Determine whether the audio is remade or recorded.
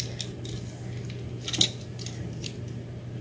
recorded